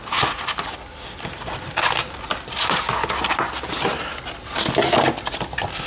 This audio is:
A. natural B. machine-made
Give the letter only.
A